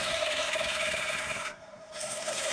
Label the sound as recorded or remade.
remade